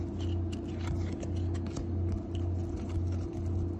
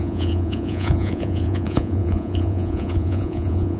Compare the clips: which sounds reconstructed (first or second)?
second